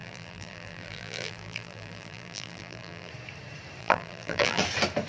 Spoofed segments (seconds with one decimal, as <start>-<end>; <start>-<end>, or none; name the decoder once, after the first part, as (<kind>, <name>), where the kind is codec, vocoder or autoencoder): 0.0-3.1 (vocoder, BigVGAN v2); 3.8-4.6